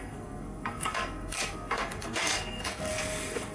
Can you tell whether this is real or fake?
fake